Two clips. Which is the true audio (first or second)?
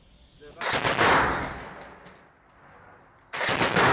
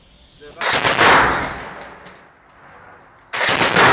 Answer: second